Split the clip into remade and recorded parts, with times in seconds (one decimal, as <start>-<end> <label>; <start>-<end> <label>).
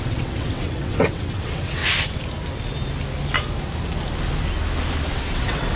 0.0-1.8 remade; 1.8-5.1 recorded; 5.1-5.8 remade